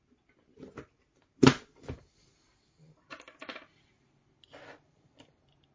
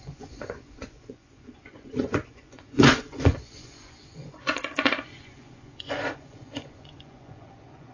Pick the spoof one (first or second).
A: second